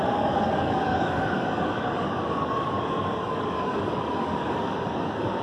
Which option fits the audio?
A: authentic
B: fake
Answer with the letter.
B